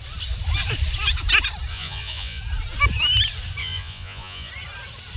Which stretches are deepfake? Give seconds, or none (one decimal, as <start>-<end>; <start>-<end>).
1.7-2.4; 3.6-4.5